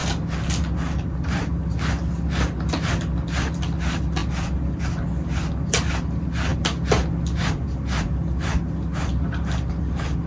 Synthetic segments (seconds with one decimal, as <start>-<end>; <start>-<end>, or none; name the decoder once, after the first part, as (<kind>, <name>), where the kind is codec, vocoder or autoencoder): none